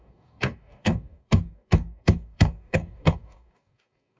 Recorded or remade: remade